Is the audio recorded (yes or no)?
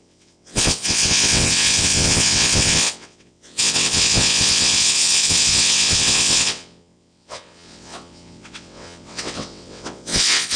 no